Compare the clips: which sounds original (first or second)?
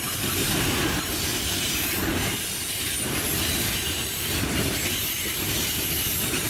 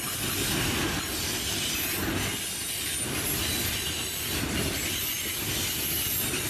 second